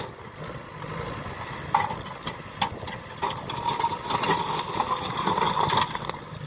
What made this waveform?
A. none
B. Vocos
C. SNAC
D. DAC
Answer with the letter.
A